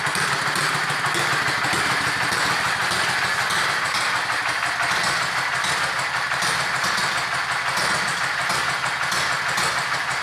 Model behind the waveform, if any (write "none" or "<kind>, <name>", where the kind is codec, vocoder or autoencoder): none